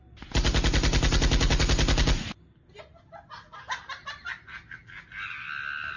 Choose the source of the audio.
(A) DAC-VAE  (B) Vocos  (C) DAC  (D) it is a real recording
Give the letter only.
D